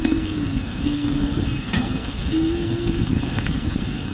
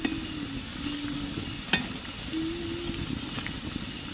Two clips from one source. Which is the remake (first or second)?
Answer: first